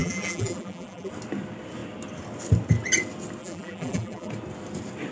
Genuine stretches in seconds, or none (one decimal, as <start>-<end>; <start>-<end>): 1.1-3.4; 4.3-5.1